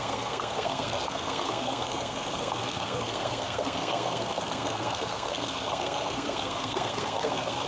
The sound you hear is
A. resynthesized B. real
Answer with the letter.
A